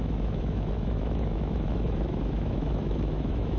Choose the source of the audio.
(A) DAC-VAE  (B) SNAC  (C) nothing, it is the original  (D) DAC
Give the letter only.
A